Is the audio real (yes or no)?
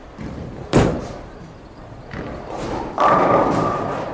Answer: no